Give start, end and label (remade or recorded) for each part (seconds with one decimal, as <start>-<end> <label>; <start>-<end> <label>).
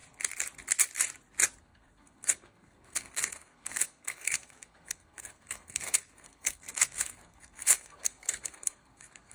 0.0-1.6 recorded; 1.6-9.3 remade